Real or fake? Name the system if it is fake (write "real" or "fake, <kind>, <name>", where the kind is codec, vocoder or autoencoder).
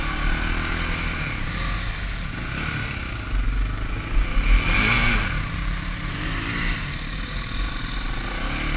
real